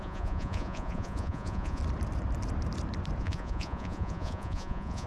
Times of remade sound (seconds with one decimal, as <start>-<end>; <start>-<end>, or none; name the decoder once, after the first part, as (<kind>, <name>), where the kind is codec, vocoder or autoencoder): 0.0-1.8 (vocoder, Vocos); 3.2-5.1

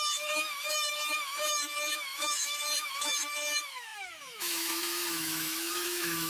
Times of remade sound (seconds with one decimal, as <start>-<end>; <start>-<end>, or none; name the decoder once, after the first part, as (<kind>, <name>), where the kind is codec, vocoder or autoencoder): 0.0-6.3 (autoencoder, DAC-VAE)

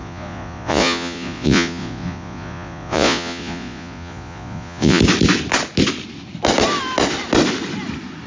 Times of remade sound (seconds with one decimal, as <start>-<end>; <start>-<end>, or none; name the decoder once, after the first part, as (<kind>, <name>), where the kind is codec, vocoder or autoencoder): 0.0-5.0 (vocoder, Vocos)

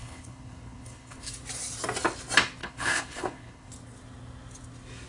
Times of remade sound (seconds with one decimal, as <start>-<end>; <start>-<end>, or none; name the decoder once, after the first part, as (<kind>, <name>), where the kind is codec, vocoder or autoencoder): 0.0-1.3 (codec, HILCodec); 2.6-3.7

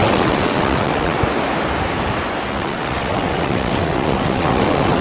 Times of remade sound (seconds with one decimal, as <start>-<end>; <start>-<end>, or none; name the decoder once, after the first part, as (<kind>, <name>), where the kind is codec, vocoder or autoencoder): 0.0-1.2 (vocoder, WaveNeXt); 2.5-5.0